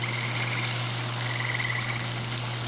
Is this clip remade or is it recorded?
recorded